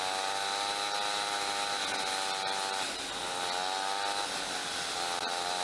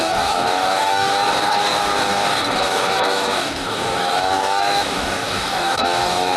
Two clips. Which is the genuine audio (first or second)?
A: first